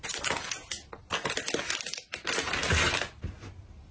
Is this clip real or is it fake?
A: real